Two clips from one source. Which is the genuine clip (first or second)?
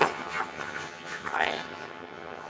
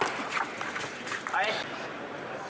second